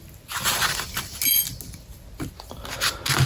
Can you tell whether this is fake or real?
real